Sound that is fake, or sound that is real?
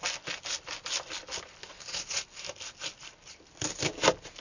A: real